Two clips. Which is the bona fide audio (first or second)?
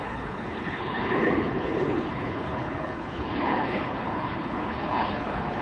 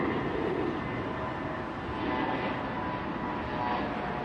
second